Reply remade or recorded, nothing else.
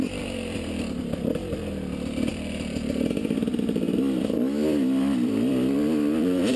remade